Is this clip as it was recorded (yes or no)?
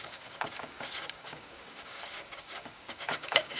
no